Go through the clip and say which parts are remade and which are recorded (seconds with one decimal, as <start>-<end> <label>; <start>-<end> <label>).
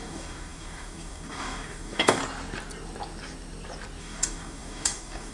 0.0-2.2 remade; 2.2-4.0 recorded; 4.0-5.3 remade